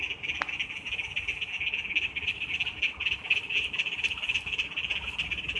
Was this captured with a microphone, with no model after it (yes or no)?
no